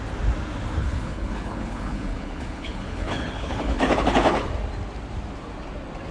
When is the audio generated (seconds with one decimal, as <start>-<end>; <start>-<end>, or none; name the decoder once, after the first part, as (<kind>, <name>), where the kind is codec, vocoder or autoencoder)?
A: 0.8-4.5 (codec, HILCodec)